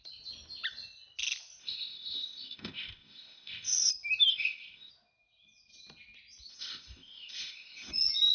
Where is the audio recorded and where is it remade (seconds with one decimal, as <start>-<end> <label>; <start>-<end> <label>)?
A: 0.0-1.6 recorded; 1.6-3.9 remade; 3.9-4.3 recorded; 4.3-4.9 remade; 4.9-6.5 recorded; 6.5-7.9 remade; 7.9-8.3 recorded